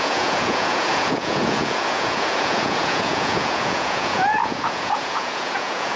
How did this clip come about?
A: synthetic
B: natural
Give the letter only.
A